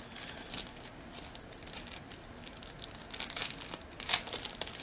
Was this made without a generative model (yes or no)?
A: yes